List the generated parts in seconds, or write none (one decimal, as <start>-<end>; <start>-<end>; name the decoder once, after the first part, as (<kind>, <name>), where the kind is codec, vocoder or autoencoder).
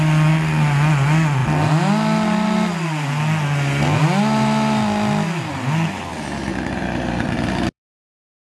6.5-7.8 (vocoder, BigVGAN v2)